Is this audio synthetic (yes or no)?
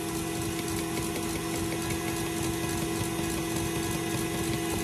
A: no